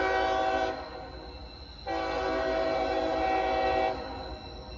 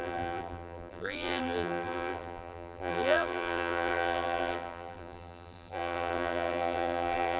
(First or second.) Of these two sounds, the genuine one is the first